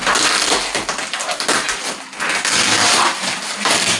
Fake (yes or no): no